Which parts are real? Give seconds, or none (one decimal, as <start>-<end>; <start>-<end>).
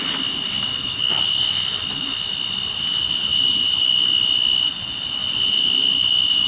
0.0-0.7; 2.3-6.5